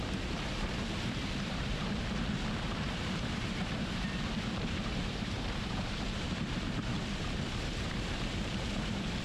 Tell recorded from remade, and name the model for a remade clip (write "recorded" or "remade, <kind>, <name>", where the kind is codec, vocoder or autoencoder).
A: remade, vocoder, BigVGAN v2